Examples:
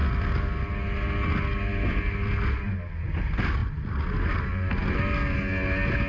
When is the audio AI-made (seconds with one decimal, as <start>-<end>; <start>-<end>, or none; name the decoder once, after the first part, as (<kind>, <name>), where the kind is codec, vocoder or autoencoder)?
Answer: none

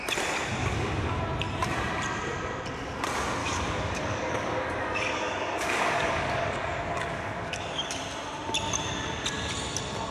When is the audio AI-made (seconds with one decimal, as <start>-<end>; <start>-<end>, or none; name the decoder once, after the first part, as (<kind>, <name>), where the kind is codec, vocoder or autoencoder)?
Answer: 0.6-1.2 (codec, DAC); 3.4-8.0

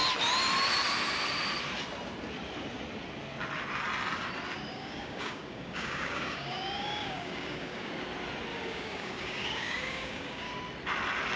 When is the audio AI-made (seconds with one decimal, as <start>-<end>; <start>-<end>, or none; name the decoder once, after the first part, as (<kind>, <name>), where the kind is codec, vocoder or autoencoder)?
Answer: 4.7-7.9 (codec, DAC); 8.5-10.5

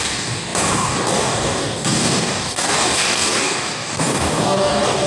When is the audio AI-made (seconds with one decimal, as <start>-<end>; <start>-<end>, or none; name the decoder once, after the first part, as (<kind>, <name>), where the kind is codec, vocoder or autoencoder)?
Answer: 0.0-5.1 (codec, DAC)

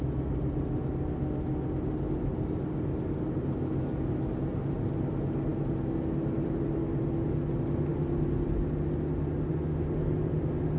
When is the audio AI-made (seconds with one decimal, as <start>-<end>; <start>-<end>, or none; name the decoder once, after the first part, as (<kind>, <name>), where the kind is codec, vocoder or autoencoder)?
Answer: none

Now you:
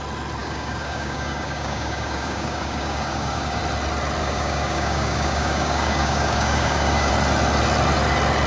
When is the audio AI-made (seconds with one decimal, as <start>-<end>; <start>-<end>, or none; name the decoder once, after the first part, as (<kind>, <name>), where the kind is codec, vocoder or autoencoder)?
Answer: 0.4-3.6 (codec, DAC); 4.2-7.1

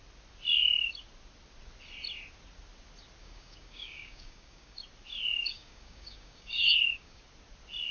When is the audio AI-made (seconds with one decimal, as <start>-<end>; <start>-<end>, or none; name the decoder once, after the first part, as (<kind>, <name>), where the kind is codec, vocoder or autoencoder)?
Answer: 3.2-4.8 (codec, DAC); 5.4-7.2

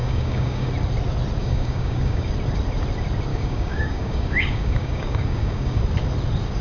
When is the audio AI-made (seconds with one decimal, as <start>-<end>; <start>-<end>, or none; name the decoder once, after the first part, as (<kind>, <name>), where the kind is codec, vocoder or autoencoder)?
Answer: 0.0-0.7 (codec, DAC); 1.4-2.3; 3.3-5.8